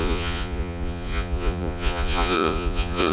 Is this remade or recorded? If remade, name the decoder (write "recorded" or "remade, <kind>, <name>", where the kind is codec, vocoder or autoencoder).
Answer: remade, vocoder, Vocos